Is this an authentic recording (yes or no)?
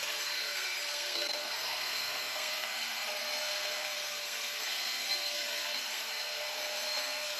no